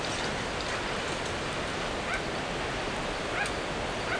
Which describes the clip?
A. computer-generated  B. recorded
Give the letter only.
B